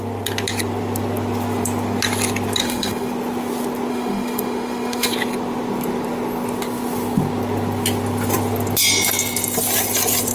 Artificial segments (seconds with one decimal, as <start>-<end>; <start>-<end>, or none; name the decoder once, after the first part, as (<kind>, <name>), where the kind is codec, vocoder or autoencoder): 2.6-3.1 (autoencoder, DAC-VAE); 3.9-5.1